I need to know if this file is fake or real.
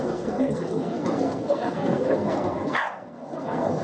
fake